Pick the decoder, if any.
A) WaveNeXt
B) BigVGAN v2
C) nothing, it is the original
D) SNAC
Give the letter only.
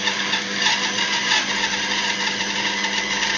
C